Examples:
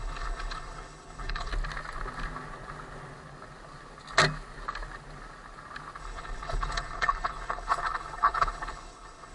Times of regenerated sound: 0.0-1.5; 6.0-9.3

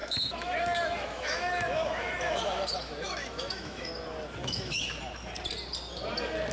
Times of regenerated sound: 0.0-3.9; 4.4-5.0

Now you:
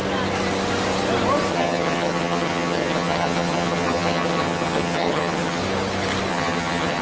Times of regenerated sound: 1.5-5.6; 6.3-7.0

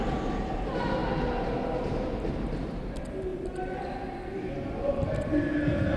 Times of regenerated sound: none

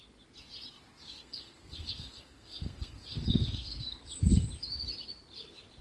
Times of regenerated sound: 1.0-4.5

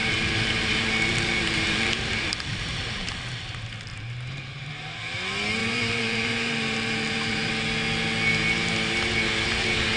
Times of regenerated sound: 0.0-3.1; 3.9-4.7; 5.6-7.5